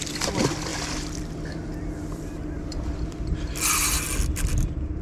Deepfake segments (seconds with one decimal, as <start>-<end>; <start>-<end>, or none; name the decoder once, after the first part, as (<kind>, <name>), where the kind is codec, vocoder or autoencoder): 0.0-5.0 (vocoder, BigVGAN v2)